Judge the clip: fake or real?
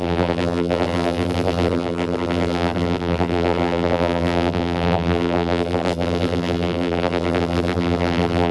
fake